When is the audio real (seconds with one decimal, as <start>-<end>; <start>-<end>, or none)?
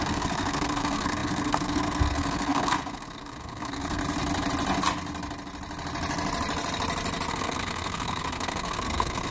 4.0-7.3